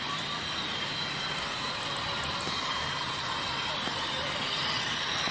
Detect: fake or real real